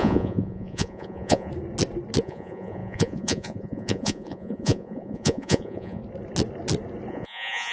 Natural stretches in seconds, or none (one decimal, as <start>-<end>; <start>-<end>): 1.5-2.2; 6.0-7.1